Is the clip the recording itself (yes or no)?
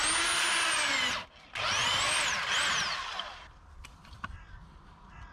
yes